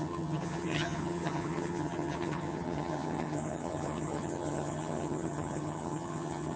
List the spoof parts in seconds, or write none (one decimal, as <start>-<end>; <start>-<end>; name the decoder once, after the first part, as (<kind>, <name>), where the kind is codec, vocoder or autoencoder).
0.0-6.6 (vocoder, HiFi-GAN)